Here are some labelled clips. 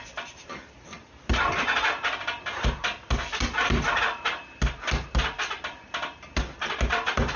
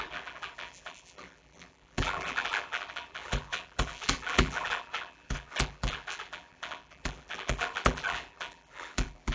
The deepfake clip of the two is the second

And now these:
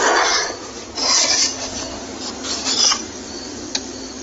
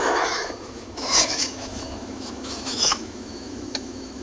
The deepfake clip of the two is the second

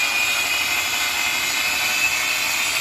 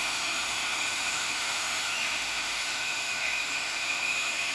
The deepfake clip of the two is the second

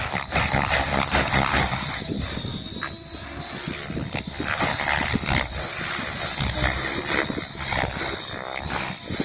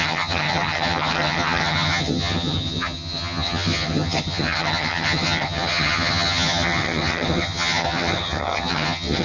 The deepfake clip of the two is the second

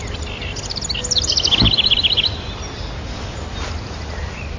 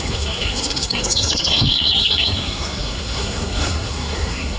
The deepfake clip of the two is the second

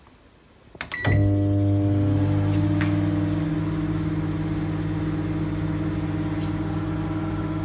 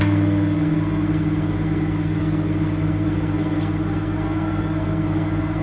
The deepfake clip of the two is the second